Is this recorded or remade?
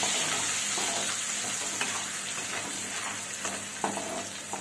recorded